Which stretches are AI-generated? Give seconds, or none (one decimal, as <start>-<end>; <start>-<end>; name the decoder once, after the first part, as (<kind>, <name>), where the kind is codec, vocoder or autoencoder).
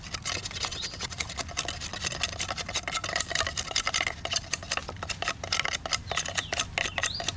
0.7-1.3 (vocoder, WaveNeXt)